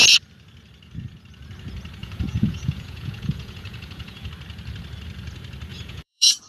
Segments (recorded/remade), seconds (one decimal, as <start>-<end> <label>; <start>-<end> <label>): 0.0-2.0 recorded; 2.0-4.3 remade; 4.3-5.7 recorded; 5.7-6.5 remade